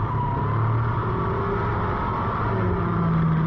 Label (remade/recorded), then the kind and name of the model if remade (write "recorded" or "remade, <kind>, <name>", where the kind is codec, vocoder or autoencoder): recorded